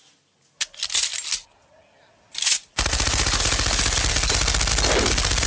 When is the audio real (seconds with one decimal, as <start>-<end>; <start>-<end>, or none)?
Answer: 0.0-5.5